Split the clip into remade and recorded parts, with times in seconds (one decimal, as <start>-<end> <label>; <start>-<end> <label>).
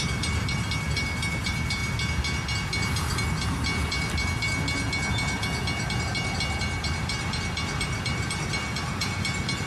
0.0-1.8 remade; 1.8-6.6 recorded; 6.6-9.7 remade